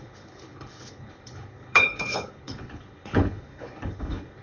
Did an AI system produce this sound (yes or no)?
yes